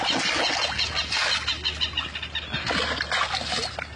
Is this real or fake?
real